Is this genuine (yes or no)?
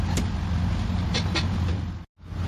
yes